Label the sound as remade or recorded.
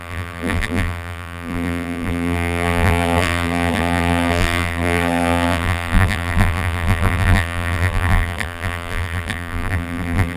remade